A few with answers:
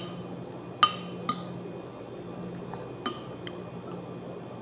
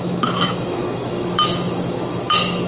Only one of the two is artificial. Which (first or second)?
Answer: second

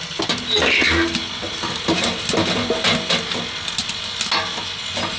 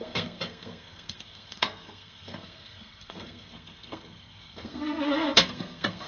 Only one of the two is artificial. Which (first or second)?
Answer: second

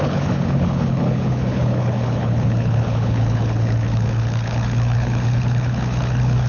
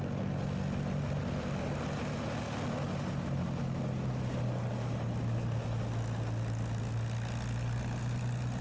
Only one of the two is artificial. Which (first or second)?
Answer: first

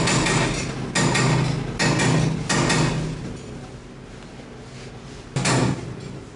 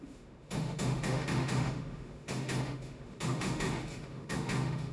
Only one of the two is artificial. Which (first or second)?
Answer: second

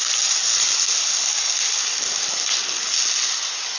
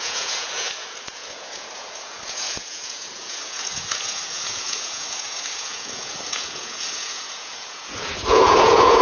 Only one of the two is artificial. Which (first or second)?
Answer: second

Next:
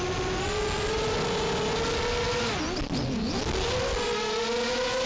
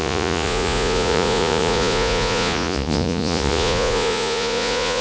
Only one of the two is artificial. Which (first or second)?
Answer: second